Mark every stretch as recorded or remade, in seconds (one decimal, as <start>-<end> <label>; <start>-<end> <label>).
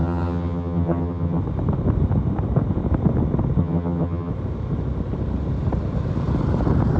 0.0-1.4 remade; 1.4-3.6 recorded; 3.6-4.3 remade; 4.3-7.0 recorded